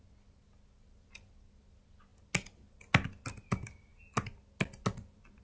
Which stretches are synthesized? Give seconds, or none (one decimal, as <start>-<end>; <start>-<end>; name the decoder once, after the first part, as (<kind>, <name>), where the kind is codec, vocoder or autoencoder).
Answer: none